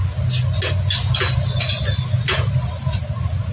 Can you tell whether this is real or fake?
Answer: real